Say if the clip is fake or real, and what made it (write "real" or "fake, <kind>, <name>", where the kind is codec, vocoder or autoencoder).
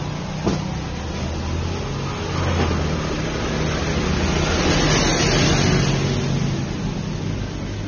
real